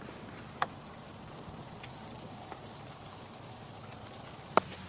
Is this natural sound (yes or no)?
yes